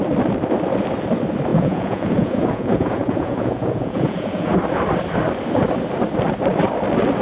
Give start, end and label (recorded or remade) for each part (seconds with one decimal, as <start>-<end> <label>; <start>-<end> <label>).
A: 0.0-1.5 recorded; 1.5-4.6 remade; 4.6-7.2 recorded